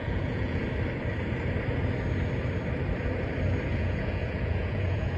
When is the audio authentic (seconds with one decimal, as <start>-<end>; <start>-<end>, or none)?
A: 0.6-3.7